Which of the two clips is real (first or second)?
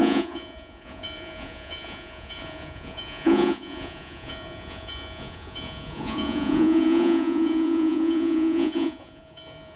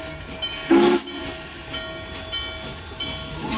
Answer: second